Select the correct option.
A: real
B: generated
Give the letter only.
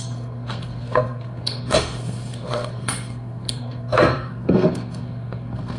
B